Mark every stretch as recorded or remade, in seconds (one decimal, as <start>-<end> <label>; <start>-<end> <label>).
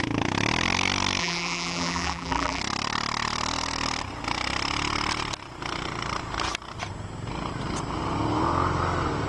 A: 0.0-1.2 recorded; 1.2-2.6 remade; 2.6-9.3 recorded